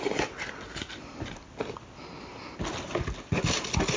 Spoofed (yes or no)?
no